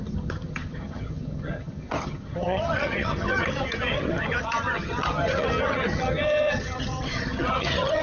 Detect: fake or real fake